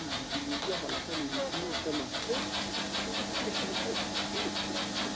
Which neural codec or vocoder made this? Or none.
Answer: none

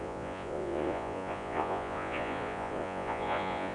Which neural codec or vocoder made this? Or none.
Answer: vocoder, Vocos